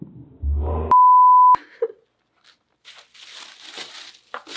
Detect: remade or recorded recorded